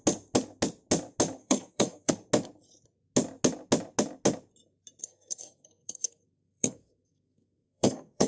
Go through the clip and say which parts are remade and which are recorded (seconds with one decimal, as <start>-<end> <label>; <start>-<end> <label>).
0.0-1.4 recorded; 1.4-2.1 remade; 2.1-5.0 recorded; 5.0-8.3 remade

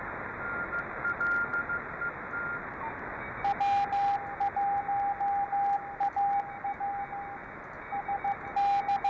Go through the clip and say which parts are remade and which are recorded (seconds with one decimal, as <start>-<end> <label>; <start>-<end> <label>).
0.0-9.1 recorded

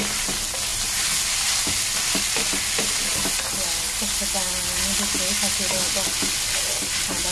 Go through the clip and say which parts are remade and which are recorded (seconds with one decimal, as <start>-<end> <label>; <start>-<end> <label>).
0.0-7.3 recorded

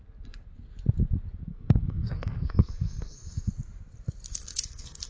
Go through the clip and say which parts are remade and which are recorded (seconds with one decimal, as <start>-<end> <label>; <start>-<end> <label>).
0.0-1.5 recorded; 1.5-3.5 remade; 3.5-4.3 recorded; 4.3-5.1 remade

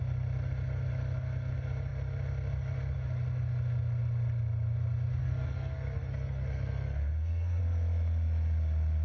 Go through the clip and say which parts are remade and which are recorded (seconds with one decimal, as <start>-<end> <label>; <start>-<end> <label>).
0.0-5.2 recorded; 5.2-7.6 remade; 7.6-9.0 recorded

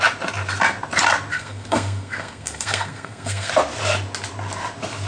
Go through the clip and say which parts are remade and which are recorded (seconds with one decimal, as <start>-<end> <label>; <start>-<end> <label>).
0.0-1.3 recorded; 1.3-3.5 remade; 3.5-5.1 recorded